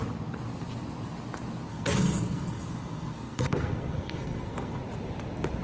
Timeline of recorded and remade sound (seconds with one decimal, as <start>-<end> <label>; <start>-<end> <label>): 0.0-1.7 recorded; 1.7-4.8 remade; 4.8-5.6 recorded

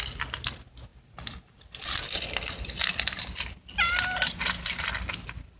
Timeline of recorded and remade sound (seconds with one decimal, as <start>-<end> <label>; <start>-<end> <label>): 0.0-5.6 recorded

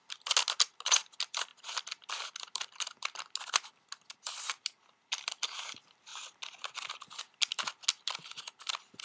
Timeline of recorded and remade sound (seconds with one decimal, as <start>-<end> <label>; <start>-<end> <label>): 0.0-9.0 recorded

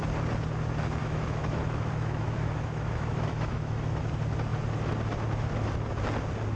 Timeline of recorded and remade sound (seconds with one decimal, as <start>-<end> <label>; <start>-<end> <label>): 0.0-1.0 recorded; 1.0-4.0 remade; 4.0-6.6 recorded

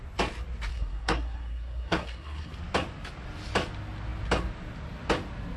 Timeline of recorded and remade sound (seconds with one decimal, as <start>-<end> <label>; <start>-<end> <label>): 0.0-0.7 recorded; 0.7-2.5 remade; 2.5-5.6 recorded

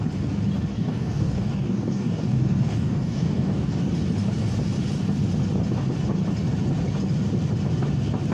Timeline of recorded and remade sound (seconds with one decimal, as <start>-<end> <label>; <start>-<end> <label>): 0.0-0.7 recorded; 0.7-3.8 remade; 3.8-8.3 recorded

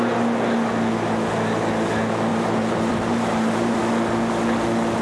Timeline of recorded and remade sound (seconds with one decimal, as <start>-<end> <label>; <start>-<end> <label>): 0.0-2.3 recorded; 2.3-3.8 remade; 3.8-5.0 recorded

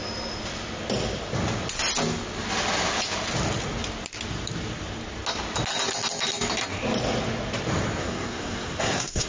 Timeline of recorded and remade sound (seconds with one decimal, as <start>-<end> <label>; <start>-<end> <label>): 0.0-8.0 recorded; 8.0-9.3 remade